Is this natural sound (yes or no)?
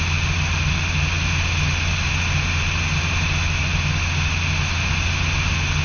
yes